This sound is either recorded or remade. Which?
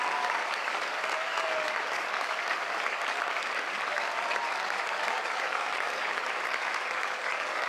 remade